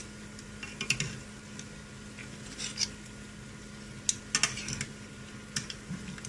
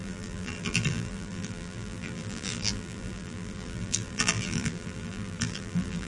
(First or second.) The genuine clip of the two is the first